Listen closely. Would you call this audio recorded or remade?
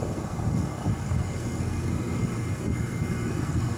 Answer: remade